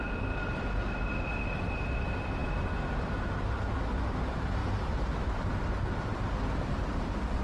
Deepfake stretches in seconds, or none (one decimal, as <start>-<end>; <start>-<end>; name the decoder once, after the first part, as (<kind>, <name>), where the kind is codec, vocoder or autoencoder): 4.6-7.0 (vocoder, BigVGAN v2)